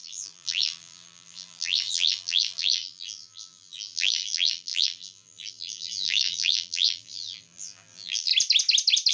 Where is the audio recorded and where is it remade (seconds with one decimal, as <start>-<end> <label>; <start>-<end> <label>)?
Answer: 0.0-8.3 remade; 8.3-9.1 recorded

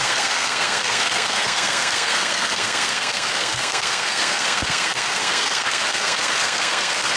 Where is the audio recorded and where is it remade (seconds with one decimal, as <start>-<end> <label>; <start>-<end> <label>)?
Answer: 0.0-7.2 remade

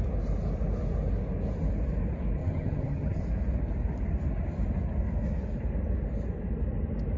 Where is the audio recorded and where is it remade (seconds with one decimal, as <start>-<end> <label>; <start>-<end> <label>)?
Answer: 0.0-2.4 recorded; 2.4-3.2 remade; 3.2-7.2 recorded